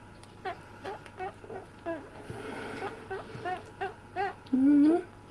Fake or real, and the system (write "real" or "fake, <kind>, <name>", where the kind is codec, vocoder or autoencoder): real